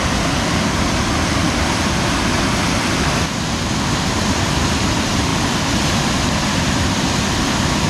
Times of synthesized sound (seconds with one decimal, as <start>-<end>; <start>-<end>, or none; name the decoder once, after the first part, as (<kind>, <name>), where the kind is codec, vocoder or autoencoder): none